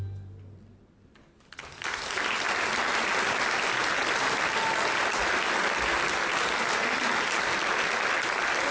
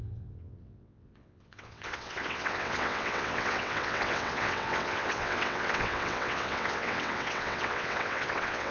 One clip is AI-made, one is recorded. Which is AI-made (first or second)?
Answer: second